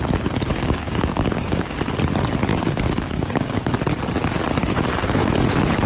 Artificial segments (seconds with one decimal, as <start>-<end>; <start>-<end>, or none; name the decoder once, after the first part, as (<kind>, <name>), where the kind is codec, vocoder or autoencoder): 0.5-1.9 (codec, DAC); 2.5-3.8; 4.6-5.3